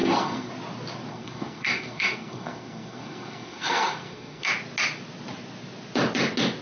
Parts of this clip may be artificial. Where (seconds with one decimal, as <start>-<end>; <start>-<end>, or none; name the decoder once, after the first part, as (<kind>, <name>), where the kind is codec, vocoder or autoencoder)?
0.0-0.5 (codec, SNAC); 1.1-4.5